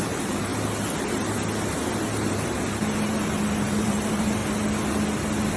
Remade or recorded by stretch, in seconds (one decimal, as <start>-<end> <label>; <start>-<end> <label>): 0.0-0.5 remade; 0.5-2.1 recorded; 2.1-4.4 remade; 4.4-5.6 recorded